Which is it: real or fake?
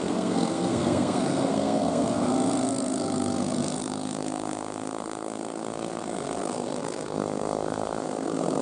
fake